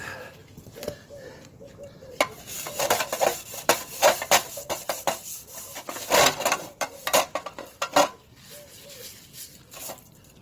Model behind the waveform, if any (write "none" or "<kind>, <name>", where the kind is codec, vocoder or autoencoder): vocoder, BigVGAN v2